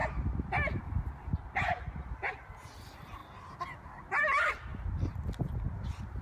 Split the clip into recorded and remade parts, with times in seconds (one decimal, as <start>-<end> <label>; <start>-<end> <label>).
0.0-3.2 remade; 3.2-4.2 recorded; 4.2-4.7 remade; 4.7-6.2 recorded